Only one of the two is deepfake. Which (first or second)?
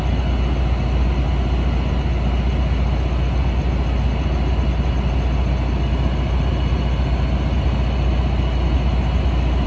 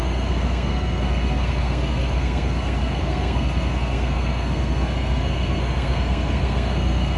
second